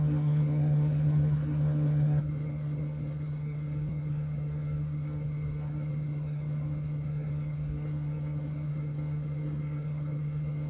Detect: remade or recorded remade